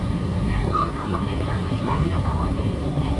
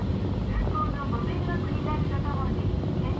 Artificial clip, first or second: first